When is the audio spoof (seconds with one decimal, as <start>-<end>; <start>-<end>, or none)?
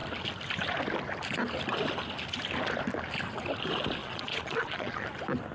4.0-5.1